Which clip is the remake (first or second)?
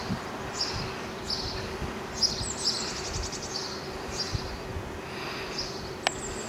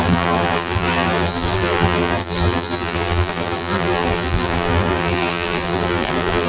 second